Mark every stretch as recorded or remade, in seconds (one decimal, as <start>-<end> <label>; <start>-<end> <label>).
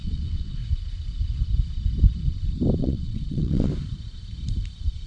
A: 0.0-0.6 remade; 0.6-2.8 recorded; 2.8-3.7 remade; 3.7-5.1 recorded